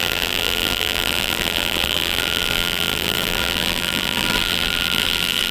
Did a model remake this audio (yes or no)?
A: yes